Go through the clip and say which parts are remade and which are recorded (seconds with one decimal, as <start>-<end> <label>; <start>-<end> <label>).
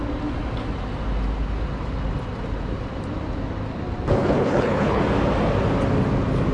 0.0-4.1 recorded; 4.1-5.0 remade; 5.0-6.5 recorded